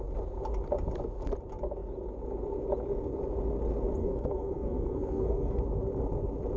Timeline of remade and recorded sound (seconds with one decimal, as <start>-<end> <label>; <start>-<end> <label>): 0.0-4.0 recorded; 4.0-5.6 remade; 5.6-6.6 recorded

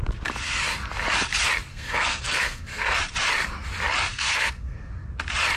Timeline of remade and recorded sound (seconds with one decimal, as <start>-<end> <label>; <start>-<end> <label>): 0.0-1.7 recorded; 1.7-3.0 remade; 3.0-4.1 recorded; 4.1-4.9 remade; 4.9-5.6 recorded